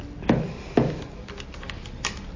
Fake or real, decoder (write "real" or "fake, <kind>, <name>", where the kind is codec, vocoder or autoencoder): real